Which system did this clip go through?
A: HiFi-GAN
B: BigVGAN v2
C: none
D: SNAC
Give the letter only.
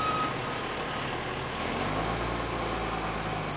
C